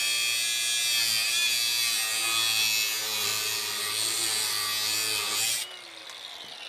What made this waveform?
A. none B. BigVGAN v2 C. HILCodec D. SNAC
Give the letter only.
A